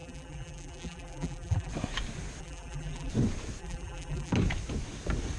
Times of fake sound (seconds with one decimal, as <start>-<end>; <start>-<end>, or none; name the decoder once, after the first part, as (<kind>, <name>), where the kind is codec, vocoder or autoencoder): 0.0-1.7 (vocoder, BigVGAN v2); 2.4-3.1; 3.6-4.3